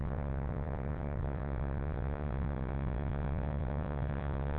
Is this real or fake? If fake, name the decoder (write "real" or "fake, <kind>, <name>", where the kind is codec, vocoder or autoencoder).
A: fake, vocoder, WaveNeXt